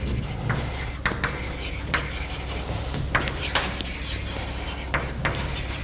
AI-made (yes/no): no